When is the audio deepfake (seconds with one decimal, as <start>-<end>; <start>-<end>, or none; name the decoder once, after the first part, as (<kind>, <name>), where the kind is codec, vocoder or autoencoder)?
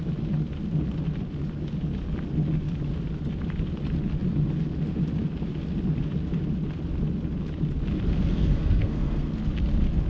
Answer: 8.3-9.3 (codec, SNAC)